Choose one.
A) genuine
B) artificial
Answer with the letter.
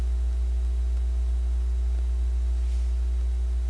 A